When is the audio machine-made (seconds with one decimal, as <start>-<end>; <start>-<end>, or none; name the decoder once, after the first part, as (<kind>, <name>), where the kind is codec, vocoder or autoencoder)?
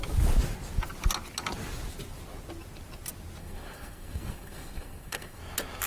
3.4-5.4 (codec, SNAC)